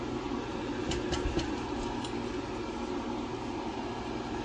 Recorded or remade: recorded